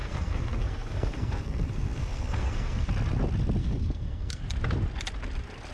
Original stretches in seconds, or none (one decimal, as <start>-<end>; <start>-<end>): 2.9-3.6; 4.4-5.7